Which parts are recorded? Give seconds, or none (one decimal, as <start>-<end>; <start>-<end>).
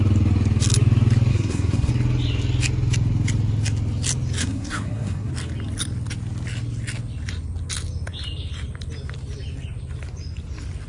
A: 0.0-1.3; 1.9-4.4; 5.3-10.9